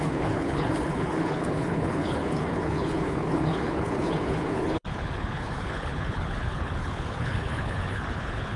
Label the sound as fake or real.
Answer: fake